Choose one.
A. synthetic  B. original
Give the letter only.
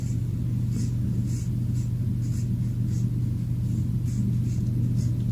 B